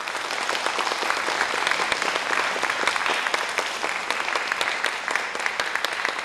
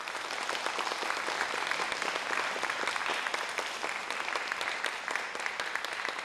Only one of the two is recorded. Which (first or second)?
first